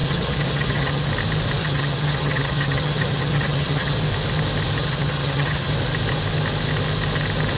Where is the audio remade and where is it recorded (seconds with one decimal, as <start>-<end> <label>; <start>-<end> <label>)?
0.0-1.1 remade; 1.1-1.6 recorded; 1.6-4.0 remade; 4.0-4.8 recorded; 4.8-5.7 remade; 5.7-7.6 recorded